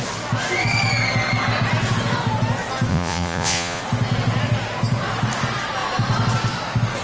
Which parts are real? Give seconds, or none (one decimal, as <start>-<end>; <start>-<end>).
0.0-2.9; 3.8-7.0